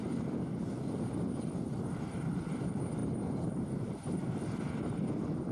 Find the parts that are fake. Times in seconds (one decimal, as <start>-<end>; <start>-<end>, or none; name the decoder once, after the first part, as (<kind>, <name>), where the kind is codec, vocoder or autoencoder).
3.0-4.9 (vocoder, BigVGAN v2)